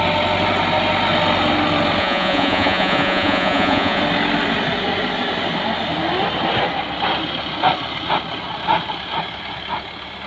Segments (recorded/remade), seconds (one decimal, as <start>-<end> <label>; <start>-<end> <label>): 0.0-2.0 recorded; 2.0-4.0 remade; 4.0-10.3 recorded